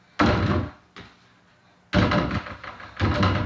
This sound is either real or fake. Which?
real